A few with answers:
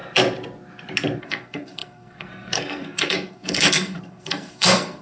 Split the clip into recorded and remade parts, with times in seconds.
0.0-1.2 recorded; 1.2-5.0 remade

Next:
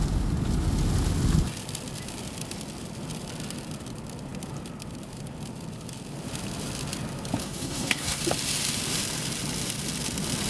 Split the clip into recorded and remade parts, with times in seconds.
0.0-7.4 recorded; 7.4-8.2 remade; 8.2-10.5 recorded

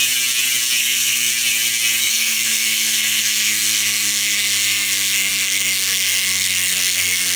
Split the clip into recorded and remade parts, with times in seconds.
0.0-0.8 recorded; 0.8-1.3 remade; 1.3-2.0 recorded; 2.0-7.4 remade

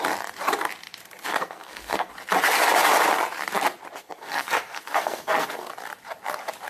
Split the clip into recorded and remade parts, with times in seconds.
0.0-1.3 recorded; 1.3-2.1 remade; 2.1-4.0 recorded; 4.0-5.7 remade; 5.7-6.7 recorded